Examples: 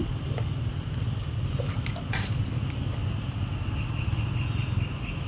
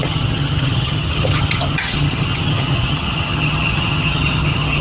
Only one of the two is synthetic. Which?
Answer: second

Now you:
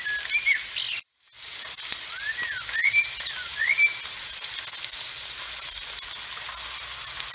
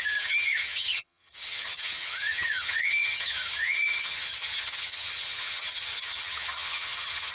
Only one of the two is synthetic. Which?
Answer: second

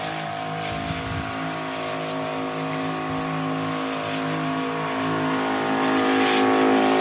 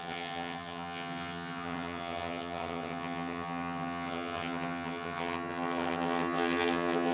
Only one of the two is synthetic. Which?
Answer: second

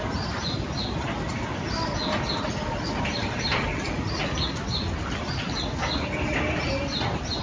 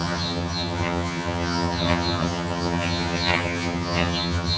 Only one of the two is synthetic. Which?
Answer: second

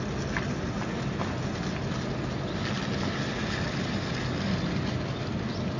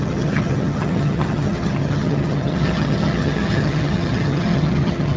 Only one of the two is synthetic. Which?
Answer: second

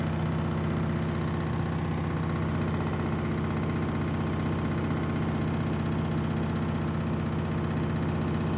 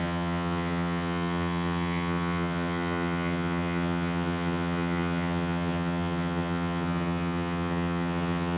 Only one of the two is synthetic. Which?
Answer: second